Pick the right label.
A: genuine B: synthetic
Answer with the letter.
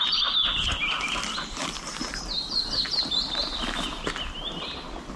A